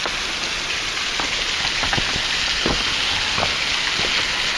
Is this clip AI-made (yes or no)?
no